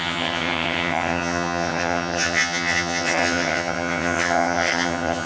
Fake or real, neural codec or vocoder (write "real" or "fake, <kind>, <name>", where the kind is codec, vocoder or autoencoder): fake, vocoder, HiFi-GAN